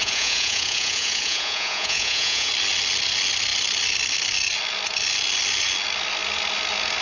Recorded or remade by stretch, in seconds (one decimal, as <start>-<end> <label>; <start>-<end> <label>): 0.0-2.5 remade; 2.5-7.0 recorded

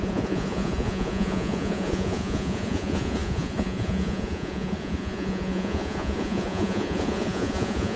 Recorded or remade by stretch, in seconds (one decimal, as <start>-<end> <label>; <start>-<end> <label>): 0.0-8.0 remade

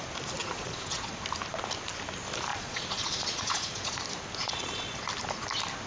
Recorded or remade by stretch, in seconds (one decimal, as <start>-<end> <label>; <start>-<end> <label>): 0.0-0.4 recorded; 0.4-1.2 remade; 1.2-2.5 recorded; 2.5-4.0 remade; 4.0-4.4 recorded; 4.4-5.0 remade; 5.0-5.9 recorded

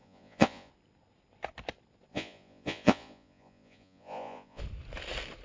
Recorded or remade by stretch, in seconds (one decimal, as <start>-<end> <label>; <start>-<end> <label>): 0.0-0.7 remade; 0.7-2.1 recorded; 2.1-4.6 remade; 4.6-5.4 recorded

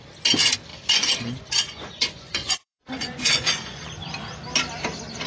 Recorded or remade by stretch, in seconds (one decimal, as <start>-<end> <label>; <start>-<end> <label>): 0.0-0.7 recorded; 0.7-3.9 remade; 3.9-5.3 recorded